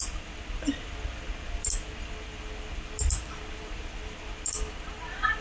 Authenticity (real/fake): real